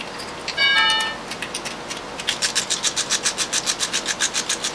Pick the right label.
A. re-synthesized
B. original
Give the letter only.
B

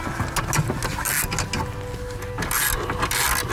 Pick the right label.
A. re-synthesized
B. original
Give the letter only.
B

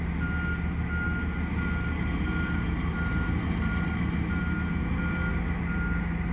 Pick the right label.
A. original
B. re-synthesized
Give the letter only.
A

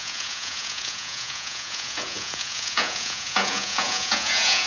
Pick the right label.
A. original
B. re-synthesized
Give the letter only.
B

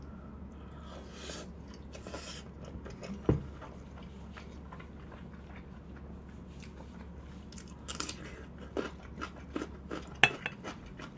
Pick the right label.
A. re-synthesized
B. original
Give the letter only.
B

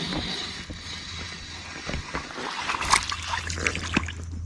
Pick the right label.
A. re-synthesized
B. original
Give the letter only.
B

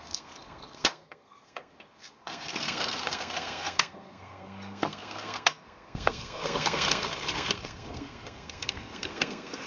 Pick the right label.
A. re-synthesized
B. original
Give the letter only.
A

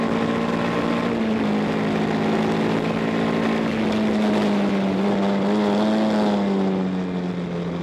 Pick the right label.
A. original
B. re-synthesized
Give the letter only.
A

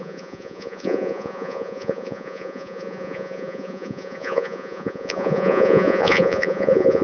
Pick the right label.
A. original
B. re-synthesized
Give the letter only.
B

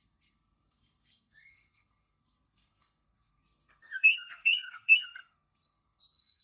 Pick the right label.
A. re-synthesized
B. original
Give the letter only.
A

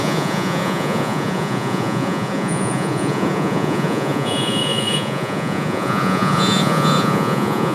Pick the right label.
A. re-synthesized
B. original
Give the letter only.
A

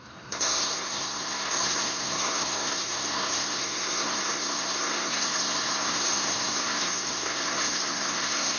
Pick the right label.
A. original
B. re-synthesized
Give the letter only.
B